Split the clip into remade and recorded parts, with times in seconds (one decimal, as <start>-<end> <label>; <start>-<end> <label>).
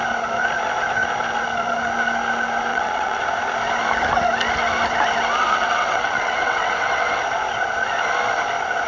0.0-2.7 recorded; 2.7-3.2 remade; 3.2-5.4 recorded; 5.4-7.2 remade; 7.2-8.9 recorded